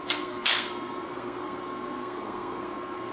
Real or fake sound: fake